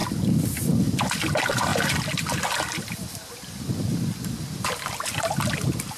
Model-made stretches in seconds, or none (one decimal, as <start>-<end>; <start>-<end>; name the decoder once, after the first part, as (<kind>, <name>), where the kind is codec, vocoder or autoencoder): none